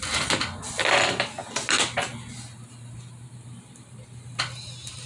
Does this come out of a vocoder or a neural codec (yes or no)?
no